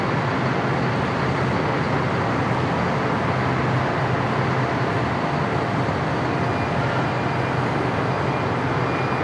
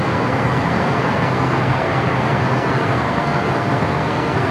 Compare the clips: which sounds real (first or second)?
first